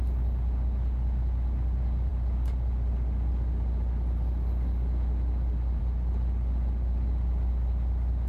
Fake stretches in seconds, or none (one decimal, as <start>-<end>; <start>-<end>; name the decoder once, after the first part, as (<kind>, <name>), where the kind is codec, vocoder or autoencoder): none

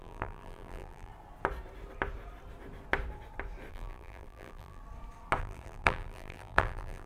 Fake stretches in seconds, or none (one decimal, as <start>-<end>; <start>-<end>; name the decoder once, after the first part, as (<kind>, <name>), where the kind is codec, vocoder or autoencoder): 0.0-1.1 (vocoder, BigVGAN v2); 3.7-4.8; 5.4-7.1

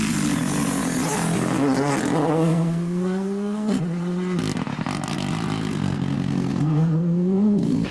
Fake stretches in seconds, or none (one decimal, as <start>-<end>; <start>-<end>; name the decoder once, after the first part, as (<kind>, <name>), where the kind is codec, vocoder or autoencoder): 2.2-3.8 (codec, SNAC); 5.7-7.9

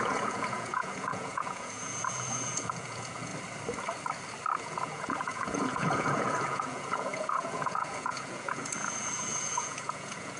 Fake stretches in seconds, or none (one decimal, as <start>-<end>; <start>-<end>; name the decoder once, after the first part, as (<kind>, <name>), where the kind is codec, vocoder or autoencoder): 0.0-3.3 (vocoder, Vocos); 4.6-10.4

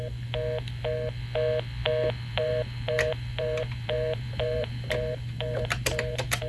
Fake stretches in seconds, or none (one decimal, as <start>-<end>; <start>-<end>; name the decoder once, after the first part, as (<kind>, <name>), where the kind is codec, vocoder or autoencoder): 2.3-6.5 (vocoder, BigVGAN v2)

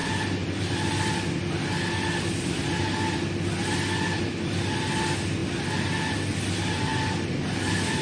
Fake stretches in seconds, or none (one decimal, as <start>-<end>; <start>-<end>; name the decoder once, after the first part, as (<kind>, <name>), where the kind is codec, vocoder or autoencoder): 0.0-1.1 (vocoder, BigVGAN v2); 5.4-6.1